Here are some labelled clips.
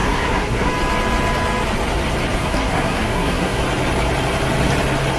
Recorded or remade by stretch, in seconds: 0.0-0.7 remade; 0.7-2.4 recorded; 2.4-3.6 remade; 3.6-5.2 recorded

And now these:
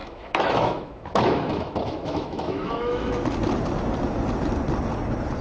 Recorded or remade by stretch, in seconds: 0.0-3.2 remade; 3.2-5.4 recorded

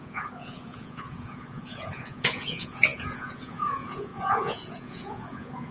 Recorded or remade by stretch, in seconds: 0.0-5.7 remade

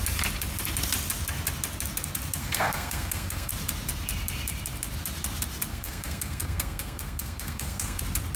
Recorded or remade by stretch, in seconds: 0.0-2.4 recorded; 2.4-3.5 remade; 3.5-5.7 recorded; 5.7-8.0 remade; 8.0-8.4 recorded

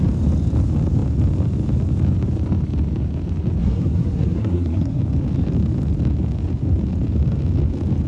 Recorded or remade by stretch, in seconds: 0.0-3.6 recorded; 3.6-5.0 remade; 5.0-8.1 recorded

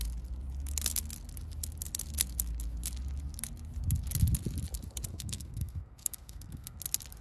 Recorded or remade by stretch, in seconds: 0.0-5.1 recorded; 5.1-6.8 remade; 6.8-7.2 recorded